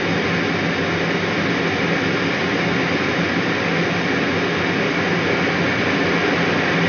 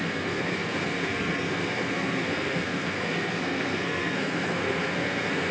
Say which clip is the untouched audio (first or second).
first